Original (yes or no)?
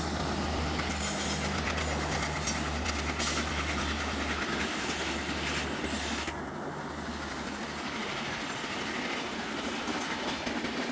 yes